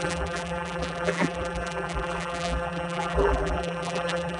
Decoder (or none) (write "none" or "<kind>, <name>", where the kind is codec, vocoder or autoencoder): vocoder, BigVGAN v2